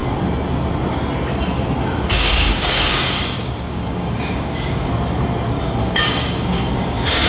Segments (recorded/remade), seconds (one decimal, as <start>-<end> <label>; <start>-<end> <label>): 0.0-2.1 recorded; 2.1-4.9 remade; 4.9-5.8 recorded; 5.8-7.3 remade